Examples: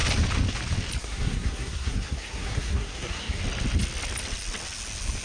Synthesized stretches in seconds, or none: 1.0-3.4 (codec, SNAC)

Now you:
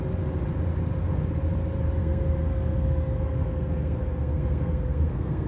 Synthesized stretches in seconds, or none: 2.0-5.5 (codec, SNAC)

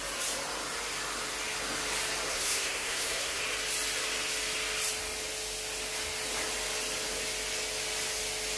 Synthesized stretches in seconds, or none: 2.3-3.4 (codec, SNAC)

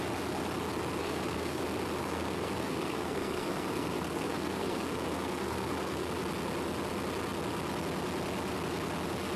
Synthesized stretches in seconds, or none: 1.0-1.6 (codec, SNAC); 2.0-6.1

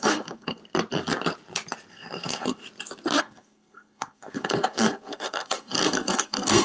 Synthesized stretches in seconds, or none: 0.0-0.6 (codec, SNAC); 1.9-2.6; 3.2-6.6

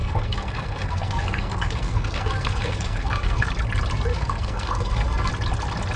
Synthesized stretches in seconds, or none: 0.0-3.5 (codec, SNAC); 4.1-5.3

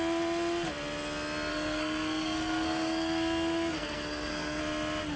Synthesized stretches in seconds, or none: 1.5-4.6 (codec, SNAC)